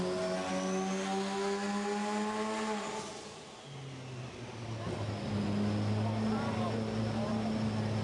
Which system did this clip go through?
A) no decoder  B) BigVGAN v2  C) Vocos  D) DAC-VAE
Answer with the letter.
A